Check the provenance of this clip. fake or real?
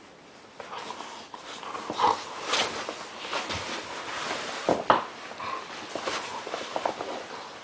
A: real